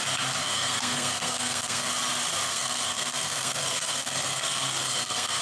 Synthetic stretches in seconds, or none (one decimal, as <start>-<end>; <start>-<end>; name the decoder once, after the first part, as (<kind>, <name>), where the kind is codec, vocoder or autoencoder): 0.4-1.9 (codec, SNAC); 2.5-5.4